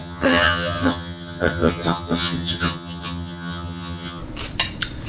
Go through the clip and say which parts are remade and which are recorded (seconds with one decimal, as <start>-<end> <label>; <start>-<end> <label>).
0.0-4.2 remade; 4.2-5.1 recorded